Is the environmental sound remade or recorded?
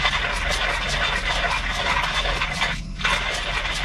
recorded